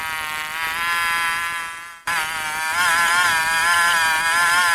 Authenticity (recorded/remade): recorded